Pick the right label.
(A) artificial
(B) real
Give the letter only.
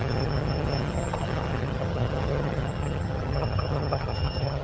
A